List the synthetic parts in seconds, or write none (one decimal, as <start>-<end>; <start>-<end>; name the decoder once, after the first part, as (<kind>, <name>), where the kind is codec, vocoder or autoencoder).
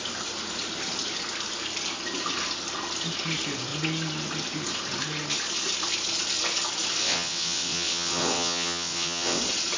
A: 7.0-9.4 (vocoder, WaveNeXt)